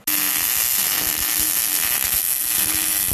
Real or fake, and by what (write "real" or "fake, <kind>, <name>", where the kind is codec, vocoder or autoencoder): real